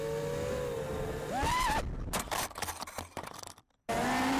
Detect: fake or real real